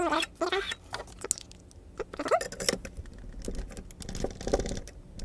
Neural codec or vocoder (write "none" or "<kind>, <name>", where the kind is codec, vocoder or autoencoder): none